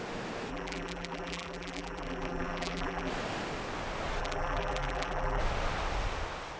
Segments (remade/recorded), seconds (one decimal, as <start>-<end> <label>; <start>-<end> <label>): 0.0-0.5 recorded; 0.5-3.1 remade; 3.1-4.2 recorded; 4.2-5.4 remade; 5.4-6.6 recorded